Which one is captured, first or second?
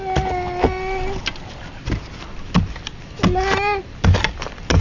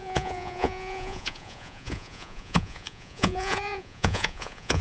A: first